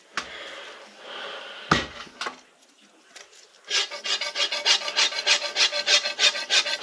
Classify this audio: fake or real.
real